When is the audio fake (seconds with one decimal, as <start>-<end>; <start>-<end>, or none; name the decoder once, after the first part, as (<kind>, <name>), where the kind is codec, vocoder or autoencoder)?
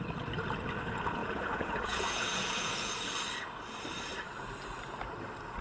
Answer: 1.2-2.9 (vocoder, Vocos)